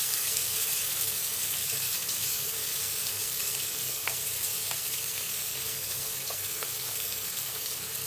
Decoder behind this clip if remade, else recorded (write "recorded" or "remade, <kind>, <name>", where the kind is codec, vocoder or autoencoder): remade, codec, SNAC